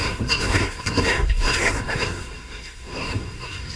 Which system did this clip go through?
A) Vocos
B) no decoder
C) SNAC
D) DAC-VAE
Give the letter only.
C